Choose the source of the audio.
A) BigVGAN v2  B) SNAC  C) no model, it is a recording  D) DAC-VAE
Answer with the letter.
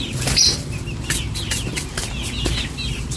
C